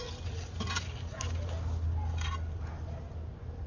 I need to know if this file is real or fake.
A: real